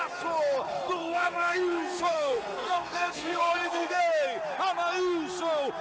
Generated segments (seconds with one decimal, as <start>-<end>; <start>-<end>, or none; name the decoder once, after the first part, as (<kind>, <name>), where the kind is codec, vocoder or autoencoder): 1.0-4.0 (codec, SNAC)